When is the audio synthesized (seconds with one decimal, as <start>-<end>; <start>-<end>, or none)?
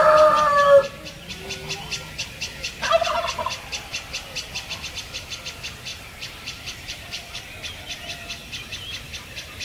5.9-7.4